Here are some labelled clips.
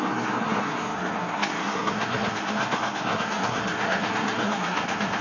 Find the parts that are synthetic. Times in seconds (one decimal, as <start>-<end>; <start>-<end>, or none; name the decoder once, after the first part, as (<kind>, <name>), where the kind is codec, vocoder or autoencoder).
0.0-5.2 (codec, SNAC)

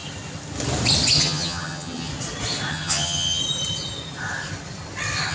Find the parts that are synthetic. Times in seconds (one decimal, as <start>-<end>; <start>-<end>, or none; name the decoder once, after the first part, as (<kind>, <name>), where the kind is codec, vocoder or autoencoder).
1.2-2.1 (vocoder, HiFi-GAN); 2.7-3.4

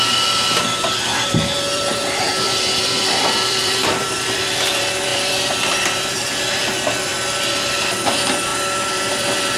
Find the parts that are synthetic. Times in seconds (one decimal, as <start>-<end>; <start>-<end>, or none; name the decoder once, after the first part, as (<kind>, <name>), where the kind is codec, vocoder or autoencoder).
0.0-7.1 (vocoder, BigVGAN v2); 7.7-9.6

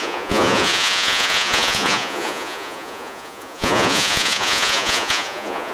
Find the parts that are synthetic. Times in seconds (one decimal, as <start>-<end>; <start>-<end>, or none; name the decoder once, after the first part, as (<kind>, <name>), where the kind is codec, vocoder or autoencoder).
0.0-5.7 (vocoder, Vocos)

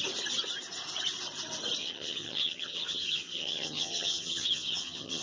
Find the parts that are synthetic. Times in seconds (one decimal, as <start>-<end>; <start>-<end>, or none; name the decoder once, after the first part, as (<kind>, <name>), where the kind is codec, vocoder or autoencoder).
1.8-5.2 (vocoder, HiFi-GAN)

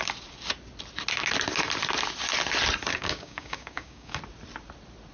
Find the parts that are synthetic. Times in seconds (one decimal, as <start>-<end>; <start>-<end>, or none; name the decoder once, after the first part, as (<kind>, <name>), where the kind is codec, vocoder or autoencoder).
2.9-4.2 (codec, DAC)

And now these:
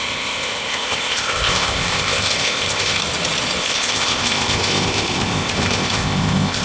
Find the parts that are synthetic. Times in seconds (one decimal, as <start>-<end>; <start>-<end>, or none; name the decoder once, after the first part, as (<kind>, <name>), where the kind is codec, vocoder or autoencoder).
0.0-3.0 (codec, ZipCodec); 3.6-6.6